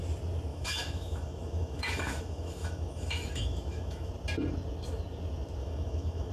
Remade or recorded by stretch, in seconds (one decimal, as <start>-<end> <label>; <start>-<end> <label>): 0.0-0.5 recorded; 0.5-4.1 remade; 4.1-5.6 recorded; 5.6-6.3 remade